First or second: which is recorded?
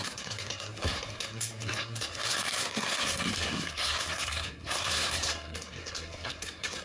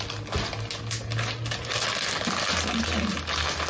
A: second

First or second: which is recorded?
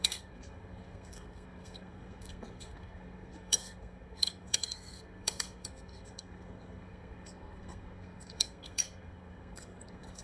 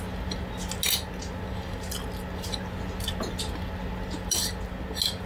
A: second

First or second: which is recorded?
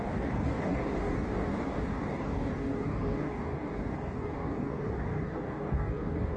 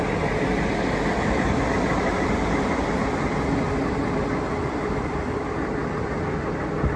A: second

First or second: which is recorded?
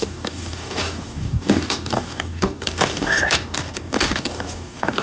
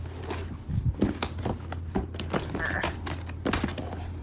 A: second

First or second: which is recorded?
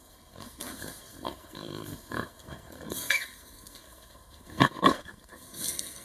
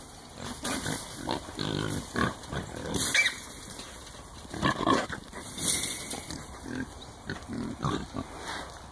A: second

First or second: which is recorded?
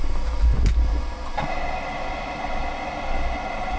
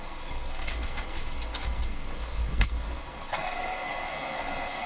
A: first